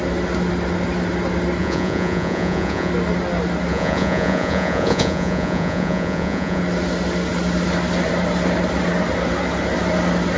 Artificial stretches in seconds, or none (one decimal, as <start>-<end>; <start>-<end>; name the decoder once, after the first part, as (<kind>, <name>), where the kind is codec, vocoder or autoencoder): 1.6-2.9 (vocoder, Vocos); 3.7-6.6